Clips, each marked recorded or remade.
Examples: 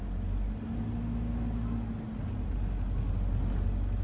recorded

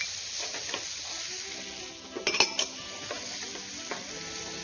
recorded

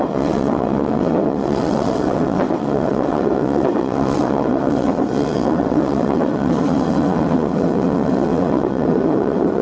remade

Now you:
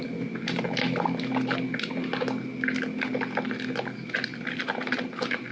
recorded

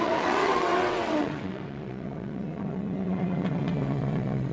remade